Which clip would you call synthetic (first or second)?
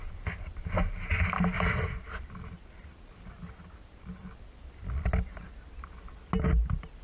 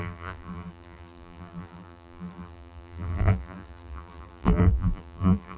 second